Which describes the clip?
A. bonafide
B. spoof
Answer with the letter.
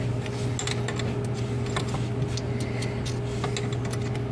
A